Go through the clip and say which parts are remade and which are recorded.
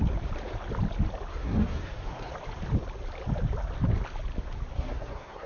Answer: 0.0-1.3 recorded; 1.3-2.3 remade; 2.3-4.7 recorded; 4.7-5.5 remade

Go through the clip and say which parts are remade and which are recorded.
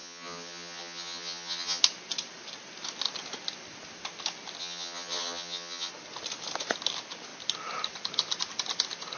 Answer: 0.0-1.8 remade; 1.8-4.6 recorded; 4.6-5.9 remade; 5.9-9.2 recorded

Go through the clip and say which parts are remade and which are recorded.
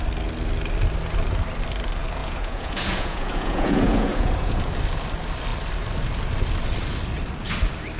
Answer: 0.0-2.2 recorded; 2.2-4.7 remade; 4.7-8.0 recorded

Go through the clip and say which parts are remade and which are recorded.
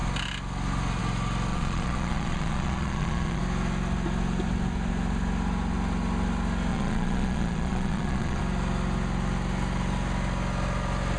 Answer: 0.0-1.5 recorded; 1.5-3.4 remade; 3.4-6.7 recorded; 6.7-8.4 remade; 8.4-11.2 recorded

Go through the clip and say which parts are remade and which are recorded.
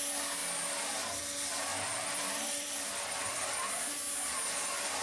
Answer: 0.0-1.7 recorded; 1.7-3.6 remade; 3.6-5.0 recorded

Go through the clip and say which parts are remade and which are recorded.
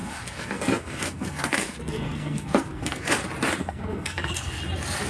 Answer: 0.0-3.1 remade; 3.1-3.6 recorded; 3.6-4.6 remade; 4.6-5.1 recorded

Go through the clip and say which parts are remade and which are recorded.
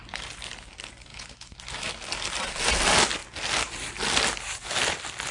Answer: 0.0-1.1 recorded; 1.1-1.9 remade; 1.9-5.3 recorded